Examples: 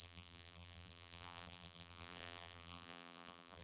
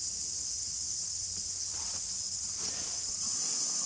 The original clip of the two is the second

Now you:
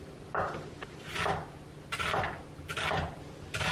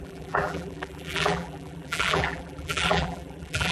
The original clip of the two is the first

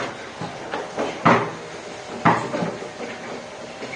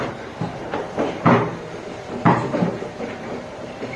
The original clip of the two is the first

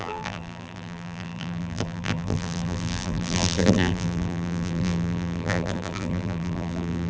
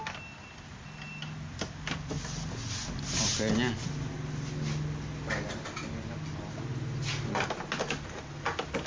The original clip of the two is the second